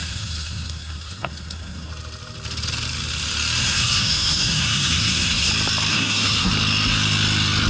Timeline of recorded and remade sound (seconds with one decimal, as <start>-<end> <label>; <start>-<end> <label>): 0.0-1.9 remade; 1.9-3.6 recorded; 3.6-5.5 remade; 5.5-5.9 recorded; 5.9-6.5 remade; 6.5-7.7 recorded

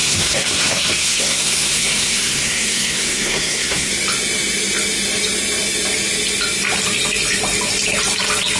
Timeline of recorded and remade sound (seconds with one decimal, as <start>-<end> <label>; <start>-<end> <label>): 0.0-3.9 remade; 3.9-8.6 recorded

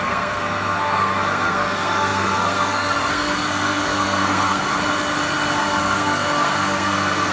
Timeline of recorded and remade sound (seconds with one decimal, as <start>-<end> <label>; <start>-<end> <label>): 0.0-4.7 remade; 4.7-5.6 recorded; 5.6-7.3 remade

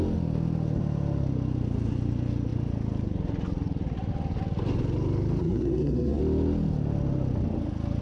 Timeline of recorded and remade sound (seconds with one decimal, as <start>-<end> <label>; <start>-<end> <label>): 0.0-5.4 recorded; 5.4-6.2 remade; 6.2-8.0 recorded

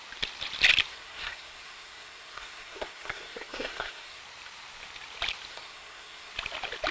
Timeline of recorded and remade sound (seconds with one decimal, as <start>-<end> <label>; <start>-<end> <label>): 0.0-0.9 recorded; 0.9-4.2 remade; 4.2-5.5 recorded; 5.5-6.3 remade; 6.3-6.9 recorded

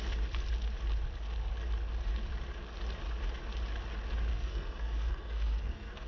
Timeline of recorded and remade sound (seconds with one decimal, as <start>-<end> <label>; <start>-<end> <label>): 0.0-4.3 recorded; 4.3-6.1 remade

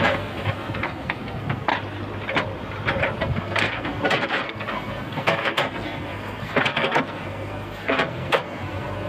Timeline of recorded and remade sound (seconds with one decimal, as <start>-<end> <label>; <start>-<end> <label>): 0.0-1.7 remade; 1.7-3.2 recorded; 3.2-9.1 remade

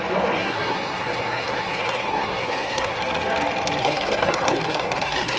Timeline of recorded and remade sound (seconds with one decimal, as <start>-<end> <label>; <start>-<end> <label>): 0.0-0.4 recorded; 0.4-3.0 remade; 3.0-3.8 recorded; 3.8-5.4 remade